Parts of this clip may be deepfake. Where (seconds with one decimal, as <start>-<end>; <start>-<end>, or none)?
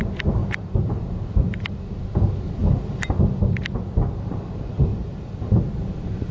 0.4-1.6; 2.6-3.1; 4.9-5.5